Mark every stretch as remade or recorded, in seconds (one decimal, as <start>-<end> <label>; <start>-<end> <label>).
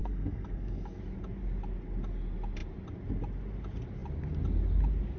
0.0-1.0 remade; 1.0-5.2 recorded